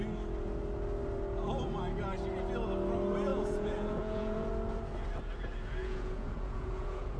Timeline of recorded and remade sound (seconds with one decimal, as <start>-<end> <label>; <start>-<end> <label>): 0.0-3.3 recorded; 3.3-4.5 remade; 4.5-5.8 recorded; 5.8-7.2 remade